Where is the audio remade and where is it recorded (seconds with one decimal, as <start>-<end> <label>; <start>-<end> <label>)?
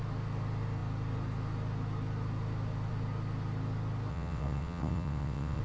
0.0-4.1 recorded; 4.1-5.6 remade